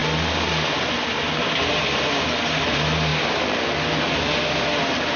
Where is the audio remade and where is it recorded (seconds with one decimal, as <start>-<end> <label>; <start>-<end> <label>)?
0.0-5.2 recorded